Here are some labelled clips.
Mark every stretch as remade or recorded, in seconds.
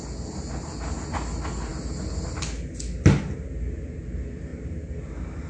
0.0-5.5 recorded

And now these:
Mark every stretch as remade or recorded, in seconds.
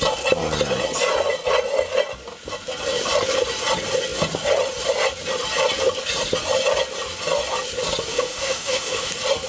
0.0-8.1 recorded; 8.1-9.1 remade; 9.1-9.5 recorded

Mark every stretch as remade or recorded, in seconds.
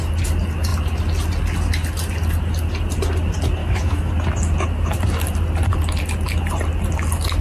0.0-3.6 recorded; 3.6-4.1 remade; 4.1-7.4 recorded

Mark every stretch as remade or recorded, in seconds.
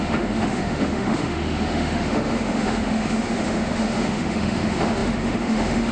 0.0-5.9 remade